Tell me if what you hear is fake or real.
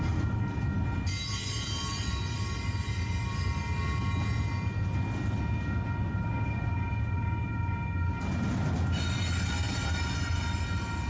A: real